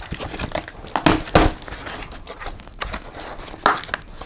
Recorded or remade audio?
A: recorded